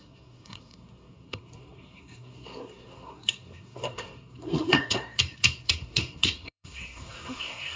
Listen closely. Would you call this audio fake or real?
fake